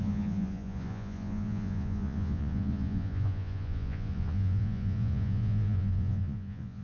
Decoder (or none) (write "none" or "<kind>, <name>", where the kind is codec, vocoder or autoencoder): vocoder, Vocos